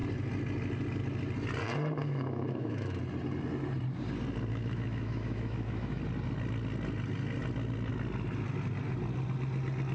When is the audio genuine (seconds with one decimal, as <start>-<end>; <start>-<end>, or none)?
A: 0.0-2.0; 3.0-4.5; 6.0-9.9